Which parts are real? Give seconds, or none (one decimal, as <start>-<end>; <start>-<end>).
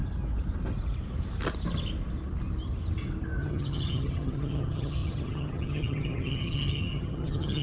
0.0-3.4